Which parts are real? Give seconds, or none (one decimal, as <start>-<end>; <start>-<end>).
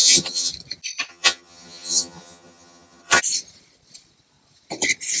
0.5-1.1; 3.2-5.2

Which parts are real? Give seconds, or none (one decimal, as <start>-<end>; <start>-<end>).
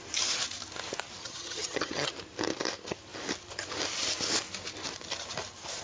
0.0-1.2; 2.1-5.8